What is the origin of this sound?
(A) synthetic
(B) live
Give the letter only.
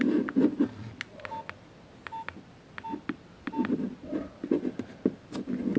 B